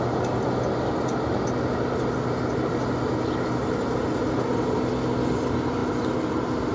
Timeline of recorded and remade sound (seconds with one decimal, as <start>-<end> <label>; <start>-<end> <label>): 0.0-6.7 recorded